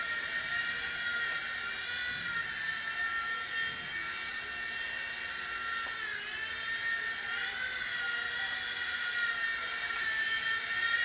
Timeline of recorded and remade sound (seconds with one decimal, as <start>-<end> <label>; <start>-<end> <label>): 0.0-11.0 recorded